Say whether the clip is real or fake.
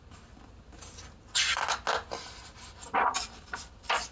real